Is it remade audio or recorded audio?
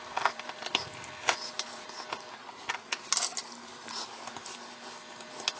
recorded